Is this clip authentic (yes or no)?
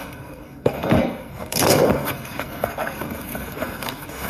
no